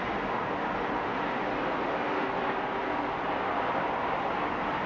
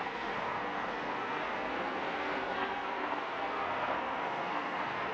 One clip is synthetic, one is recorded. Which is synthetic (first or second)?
second